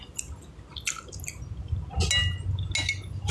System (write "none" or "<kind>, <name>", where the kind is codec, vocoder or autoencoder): none